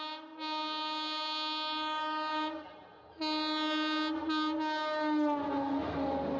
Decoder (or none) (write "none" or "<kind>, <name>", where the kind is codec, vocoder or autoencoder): none